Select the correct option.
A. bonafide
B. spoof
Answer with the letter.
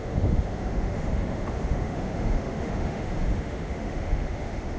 B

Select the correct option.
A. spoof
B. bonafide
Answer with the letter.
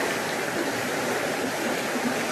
B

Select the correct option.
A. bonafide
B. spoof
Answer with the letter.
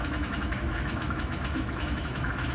B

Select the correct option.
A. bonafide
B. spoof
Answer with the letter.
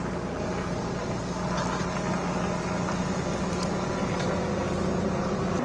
A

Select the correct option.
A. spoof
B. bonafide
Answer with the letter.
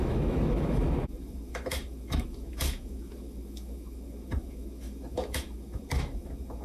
A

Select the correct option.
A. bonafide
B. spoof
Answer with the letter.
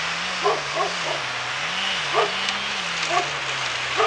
A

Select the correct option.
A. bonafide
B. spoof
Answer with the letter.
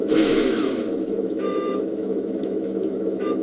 B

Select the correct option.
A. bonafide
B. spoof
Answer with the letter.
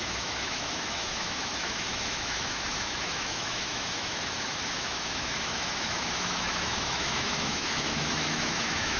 B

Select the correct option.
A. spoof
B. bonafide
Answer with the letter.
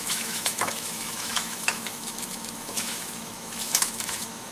A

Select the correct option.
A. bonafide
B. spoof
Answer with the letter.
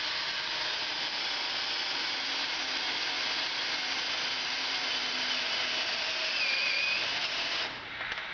A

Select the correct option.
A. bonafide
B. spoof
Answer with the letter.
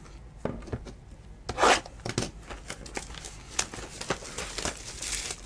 A